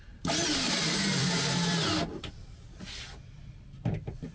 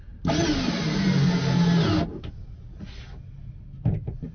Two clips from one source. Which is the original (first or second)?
second